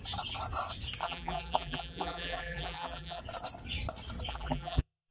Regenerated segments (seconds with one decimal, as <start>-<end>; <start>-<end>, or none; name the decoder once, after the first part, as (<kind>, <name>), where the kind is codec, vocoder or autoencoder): 1.0-3.2 (vocoder, BigVGAN v2); 4.3-5.1